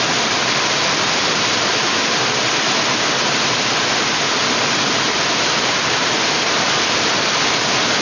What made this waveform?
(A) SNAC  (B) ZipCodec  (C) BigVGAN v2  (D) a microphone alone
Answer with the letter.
D